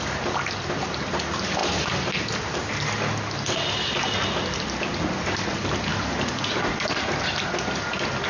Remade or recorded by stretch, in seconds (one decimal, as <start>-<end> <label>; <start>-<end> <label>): 0.0-8.3 recorded